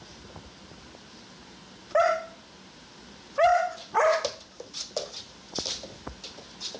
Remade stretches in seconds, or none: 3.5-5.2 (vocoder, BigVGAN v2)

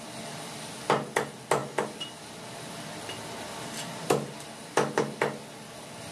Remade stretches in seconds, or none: none

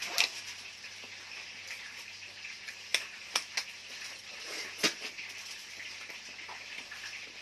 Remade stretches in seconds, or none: none

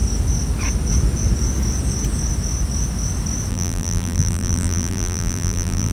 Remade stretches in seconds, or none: 3.5-5.9 (vocoder, BigVGAN v2)

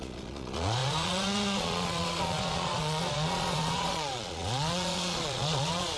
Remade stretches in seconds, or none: 0.0-6.0 (vocoder, Vocos)

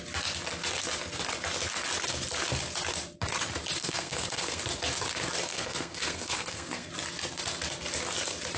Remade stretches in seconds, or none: 3.8-4.6 (codec, SNAC); 5.5-6.9

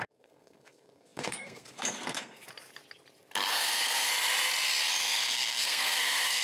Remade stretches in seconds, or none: 0.0-2.4 (codec, SNAC); 3.5-4.1; 5.0-6.4

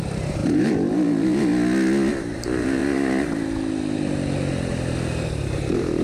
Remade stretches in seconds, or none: 0.0-1.5 (vocoder, BigVGAN v2); 2.1-2.8; 5.3-6.0